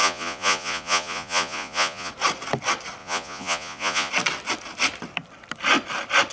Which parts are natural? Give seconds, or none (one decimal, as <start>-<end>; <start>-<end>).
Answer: 2.1-3.0; 4.1-6.3